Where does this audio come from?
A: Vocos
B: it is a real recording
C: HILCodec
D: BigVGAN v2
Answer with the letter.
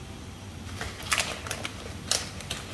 D